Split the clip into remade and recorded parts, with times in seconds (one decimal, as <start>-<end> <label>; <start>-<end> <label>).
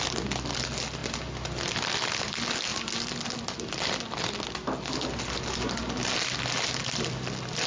0.0-7.7 recorded